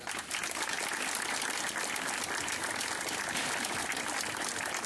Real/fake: real